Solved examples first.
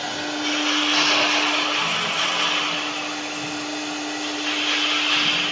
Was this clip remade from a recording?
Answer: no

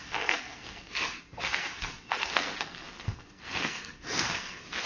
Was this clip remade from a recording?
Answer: yes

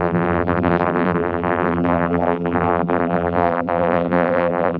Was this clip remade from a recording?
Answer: yes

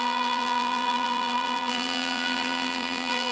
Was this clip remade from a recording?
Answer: yes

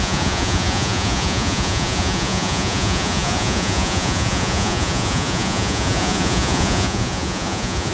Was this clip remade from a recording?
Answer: yes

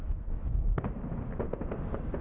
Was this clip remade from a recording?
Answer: no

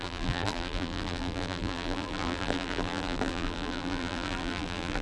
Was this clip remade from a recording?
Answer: yes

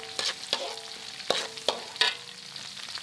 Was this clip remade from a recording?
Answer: no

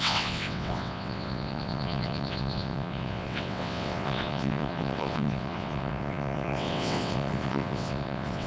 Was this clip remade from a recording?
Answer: yes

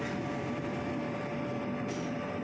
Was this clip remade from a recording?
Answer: yes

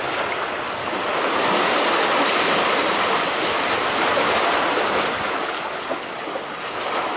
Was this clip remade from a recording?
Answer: no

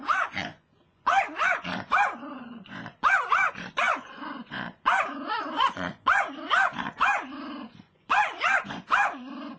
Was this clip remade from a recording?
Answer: yes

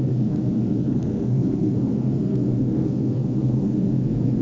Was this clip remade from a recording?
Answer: yes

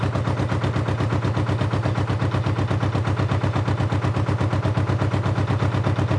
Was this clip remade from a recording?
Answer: no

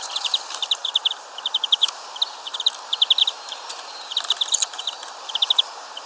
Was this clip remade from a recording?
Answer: yes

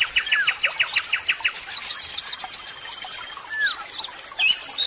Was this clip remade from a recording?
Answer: no